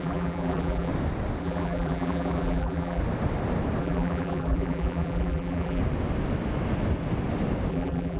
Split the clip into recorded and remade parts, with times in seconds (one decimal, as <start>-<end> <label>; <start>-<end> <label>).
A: 0.0-0.9 remade; 0.9-1.4 recorded; 1.4-3.0 remade; 3.0-3.8 recorded; 3.8-5.8 remade; 5.8-7.7 recorded; 7.7-8.2 remade